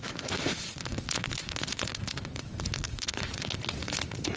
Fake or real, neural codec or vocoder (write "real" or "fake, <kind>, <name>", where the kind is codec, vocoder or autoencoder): fake, vocoder, Vocos